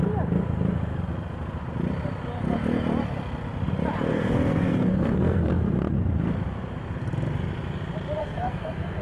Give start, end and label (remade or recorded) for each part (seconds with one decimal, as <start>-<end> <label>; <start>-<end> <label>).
0.0-4.1 recorded; 4.1-5.5 remade; 5.5-8.2 recorded; 8.2-9.0 remade